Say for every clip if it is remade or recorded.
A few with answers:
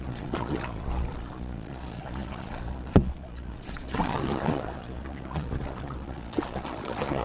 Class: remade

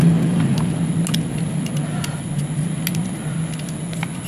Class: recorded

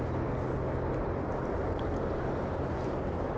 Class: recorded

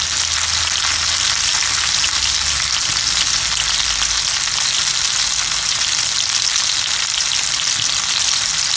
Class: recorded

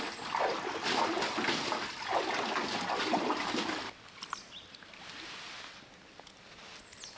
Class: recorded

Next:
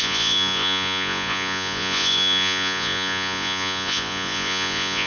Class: remade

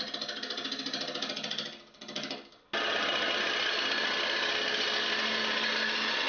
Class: recorded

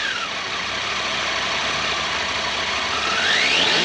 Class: recorded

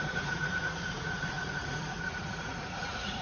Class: remade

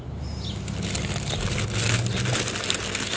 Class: recorded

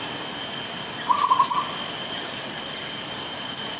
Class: recorded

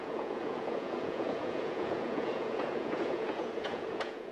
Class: remade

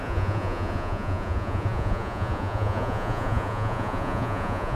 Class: remade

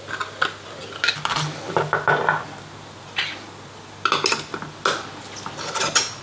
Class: recorded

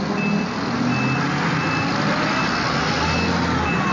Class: recorded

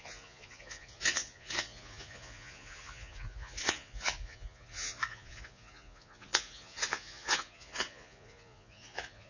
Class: remade